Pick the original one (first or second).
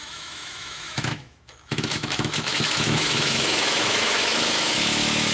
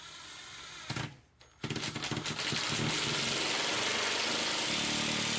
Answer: second